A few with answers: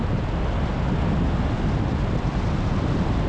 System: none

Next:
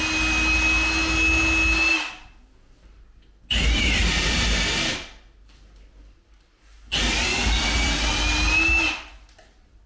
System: none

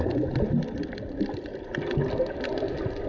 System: none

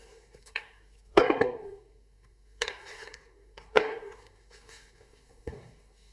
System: codec, SNAC